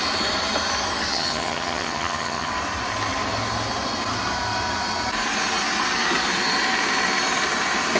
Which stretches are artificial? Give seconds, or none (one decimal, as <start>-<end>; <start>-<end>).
1.1-2.5